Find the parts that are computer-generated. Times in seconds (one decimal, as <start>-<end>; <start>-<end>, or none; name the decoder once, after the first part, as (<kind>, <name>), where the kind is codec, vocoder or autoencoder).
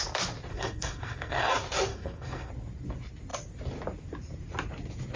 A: 0.5-1.5 (codec, SNAC); 1.9-2.5